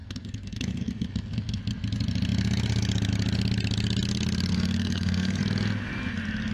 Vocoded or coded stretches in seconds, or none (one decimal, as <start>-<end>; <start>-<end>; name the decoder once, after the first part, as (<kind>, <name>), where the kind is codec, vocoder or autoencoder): 0.0-1.6 (codec, SNAC); 4.5-5.4